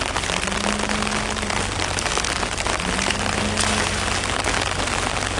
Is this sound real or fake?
real